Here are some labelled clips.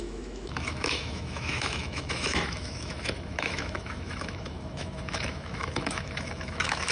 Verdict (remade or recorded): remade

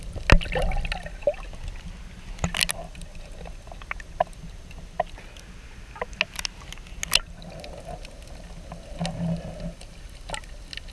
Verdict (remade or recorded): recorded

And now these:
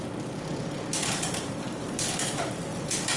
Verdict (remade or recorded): recorded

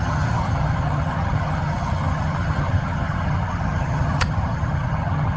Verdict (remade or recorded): remade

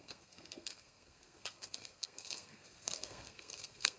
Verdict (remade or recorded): remade